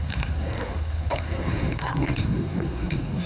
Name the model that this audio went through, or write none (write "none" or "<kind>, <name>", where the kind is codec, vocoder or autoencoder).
codec, SNAC